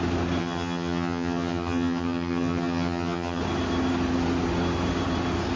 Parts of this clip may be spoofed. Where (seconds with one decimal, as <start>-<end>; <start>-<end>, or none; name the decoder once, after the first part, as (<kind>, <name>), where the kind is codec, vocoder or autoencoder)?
0.4-3.4 (vocoder, HiFi-GAN)

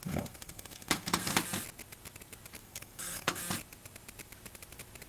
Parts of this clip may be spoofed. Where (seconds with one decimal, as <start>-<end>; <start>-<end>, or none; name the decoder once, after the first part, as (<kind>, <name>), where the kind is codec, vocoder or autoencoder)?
0.0-1.3 (codec, SNAC); 2.6-3.4

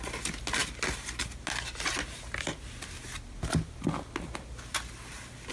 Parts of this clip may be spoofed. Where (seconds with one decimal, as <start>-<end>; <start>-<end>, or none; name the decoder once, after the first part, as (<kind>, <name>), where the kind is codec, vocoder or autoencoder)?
none